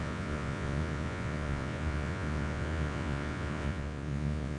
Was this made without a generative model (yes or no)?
no